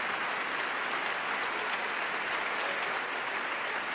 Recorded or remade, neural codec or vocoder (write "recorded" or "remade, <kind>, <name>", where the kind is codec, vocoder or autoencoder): recorded